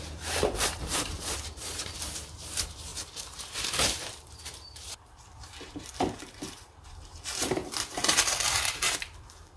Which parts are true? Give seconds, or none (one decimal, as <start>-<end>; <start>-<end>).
none

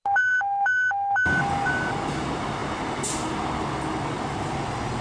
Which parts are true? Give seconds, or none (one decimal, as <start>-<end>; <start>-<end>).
0.0-5.0

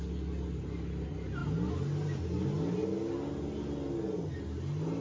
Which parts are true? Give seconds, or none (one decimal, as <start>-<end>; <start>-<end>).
0.0-5.0

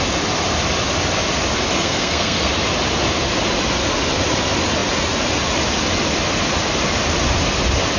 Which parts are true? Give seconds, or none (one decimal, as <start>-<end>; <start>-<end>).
0.0-1.8; 2.5-8.0

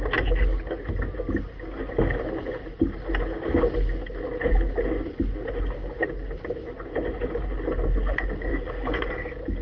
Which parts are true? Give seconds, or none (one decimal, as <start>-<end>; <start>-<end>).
0.0-8.5; 9.1-9.6

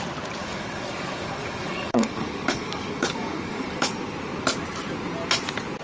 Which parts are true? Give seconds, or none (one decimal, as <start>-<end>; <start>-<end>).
0.0-0.4; 3.9-5.8